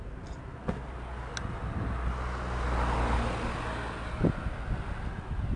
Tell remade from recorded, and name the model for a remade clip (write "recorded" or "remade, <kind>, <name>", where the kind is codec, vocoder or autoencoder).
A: recorded